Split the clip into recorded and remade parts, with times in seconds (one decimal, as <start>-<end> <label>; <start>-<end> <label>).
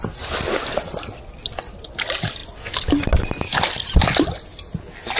0.0-5.2 recorded